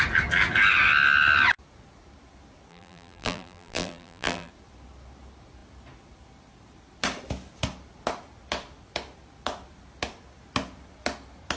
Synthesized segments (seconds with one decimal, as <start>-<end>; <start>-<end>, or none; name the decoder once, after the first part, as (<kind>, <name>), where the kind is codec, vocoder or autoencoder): 2.7-4.5 (vocoder, BigVGAN v2)